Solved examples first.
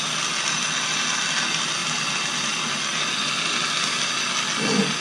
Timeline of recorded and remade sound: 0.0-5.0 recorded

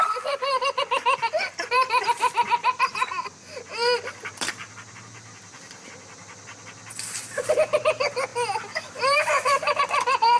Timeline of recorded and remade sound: 0.0-8.3 remade; 8.3-8.9 recorded; 8.9-10.4 remade

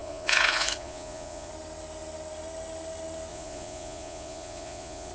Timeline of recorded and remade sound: 0.0-1.5 remade; 1.5-3.3 recorded; 3.3-5.1 remade

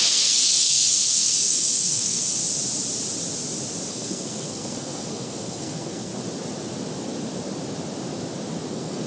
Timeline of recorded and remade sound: 0.0-2.4 remade; 2.4-3.9 recorded; 3.9-6.1 remade; 6.1-8.7 recorded; 8.7-9.1 remade

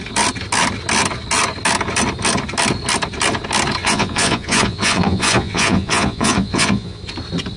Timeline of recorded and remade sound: 0.0-3.8 recorded; 3.8-7.0 remade; 7.0-7.6 recorded